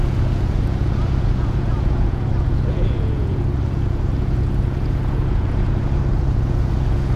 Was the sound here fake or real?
fake